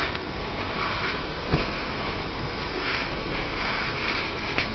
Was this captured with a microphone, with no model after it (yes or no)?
no